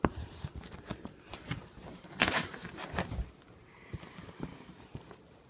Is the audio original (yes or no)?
no